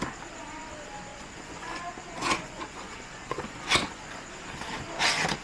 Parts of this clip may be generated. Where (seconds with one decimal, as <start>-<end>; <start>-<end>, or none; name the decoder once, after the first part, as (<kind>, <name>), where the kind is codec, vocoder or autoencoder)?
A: 1.1-4.3 (vocoder, Vocos)